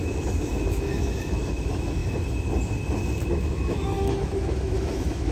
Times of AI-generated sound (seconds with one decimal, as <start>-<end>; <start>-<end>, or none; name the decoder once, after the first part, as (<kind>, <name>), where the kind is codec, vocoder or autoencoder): 0.0-2.0 (autoencoder, DAC-VAE); 3.3-5.3